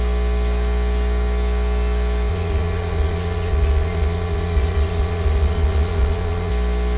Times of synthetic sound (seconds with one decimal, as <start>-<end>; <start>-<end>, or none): 2.3-6.5